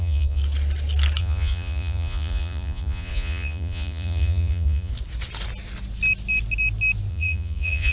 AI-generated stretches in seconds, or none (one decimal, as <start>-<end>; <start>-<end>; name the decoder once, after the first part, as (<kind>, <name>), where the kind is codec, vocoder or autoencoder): 0.0-0.4 (vocoder, Vocos); 1.2-4.9; 7.1-7.9